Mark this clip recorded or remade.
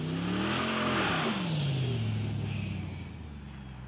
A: recorded